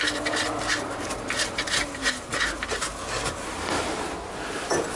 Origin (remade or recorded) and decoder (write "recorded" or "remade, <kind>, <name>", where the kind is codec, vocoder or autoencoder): recorded